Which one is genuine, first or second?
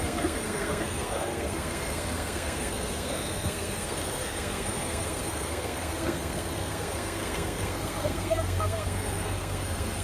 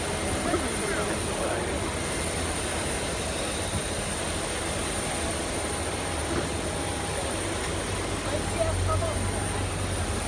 second